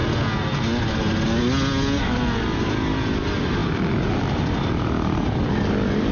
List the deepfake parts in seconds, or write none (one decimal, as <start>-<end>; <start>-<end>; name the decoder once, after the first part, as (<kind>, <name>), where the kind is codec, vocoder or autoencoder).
none